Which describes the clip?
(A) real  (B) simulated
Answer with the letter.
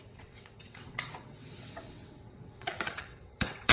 B